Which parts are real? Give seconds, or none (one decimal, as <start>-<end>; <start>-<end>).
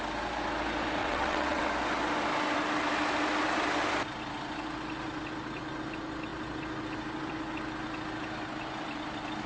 0.0-1.0; 1.7-9.5